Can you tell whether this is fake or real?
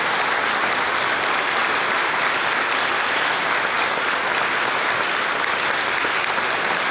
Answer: real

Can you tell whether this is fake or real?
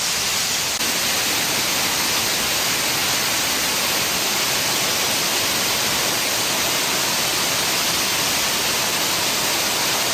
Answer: real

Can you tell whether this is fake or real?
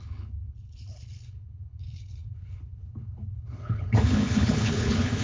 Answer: fake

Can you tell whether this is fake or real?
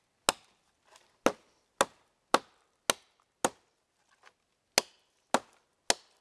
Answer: real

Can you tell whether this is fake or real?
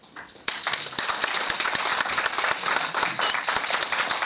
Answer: real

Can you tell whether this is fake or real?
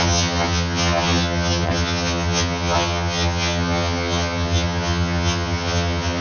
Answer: fake